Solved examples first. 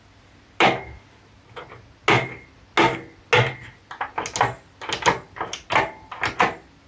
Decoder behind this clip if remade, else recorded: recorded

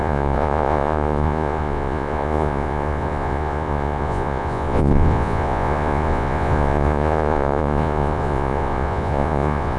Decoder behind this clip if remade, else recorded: remade, vocoder, Vocos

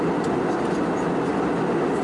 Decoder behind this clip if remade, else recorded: recorded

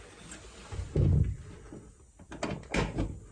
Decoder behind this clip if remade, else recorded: recorded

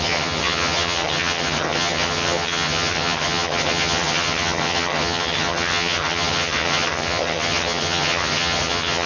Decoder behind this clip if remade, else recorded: remade, vocoder, HiFi-GAN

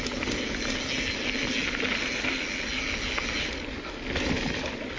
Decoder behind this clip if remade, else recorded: recorded